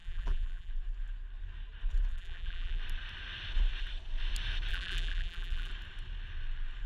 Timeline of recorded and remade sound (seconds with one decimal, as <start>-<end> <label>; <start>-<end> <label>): 0.0-0.7 remade; 0.7-2.1 recorded; 2.1-2.8 remade; 2.8-4.7 recorded; 4.7-5.7 remade; 5.7-6.9 recorded